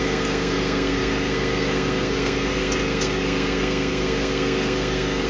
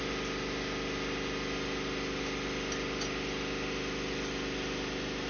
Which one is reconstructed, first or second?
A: first